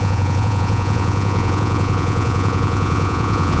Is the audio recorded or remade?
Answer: remade